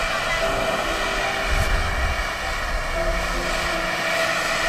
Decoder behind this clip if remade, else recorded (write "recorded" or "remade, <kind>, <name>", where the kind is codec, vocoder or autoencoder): recorded